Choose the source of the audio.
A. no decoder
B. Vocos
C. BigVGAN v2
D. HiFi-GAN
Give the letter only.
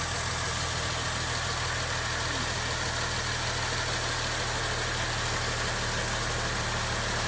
A